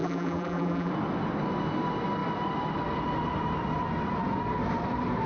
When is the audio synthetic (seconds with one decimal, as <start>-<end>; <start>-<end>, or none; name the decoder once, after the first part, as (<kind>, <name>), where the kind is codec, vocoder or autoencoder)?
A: 0.0-0.9 (vocoder, BigVGAN v2)